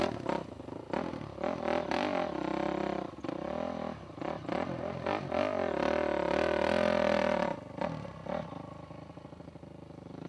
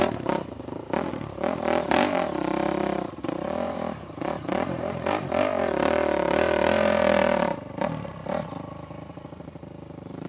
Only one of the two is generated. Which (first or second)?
second